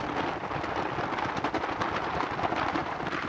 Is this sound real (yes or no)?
yes